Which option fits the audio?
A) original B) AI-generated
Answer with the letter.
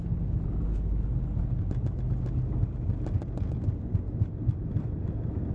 A